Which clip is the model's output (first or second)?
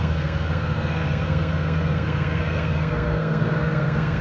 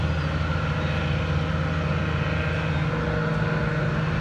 first